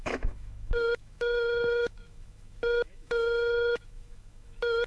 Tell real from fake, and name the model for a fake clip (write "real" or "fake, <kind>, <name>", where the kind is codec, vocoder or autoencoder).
fake, autoencoder, DAC-VAE